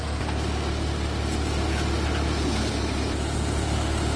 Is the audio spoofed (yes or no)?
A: no